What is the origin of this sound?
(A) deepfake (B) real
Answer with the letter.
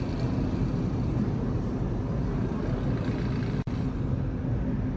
B